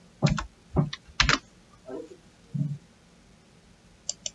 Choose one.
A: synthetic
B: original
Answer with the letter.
B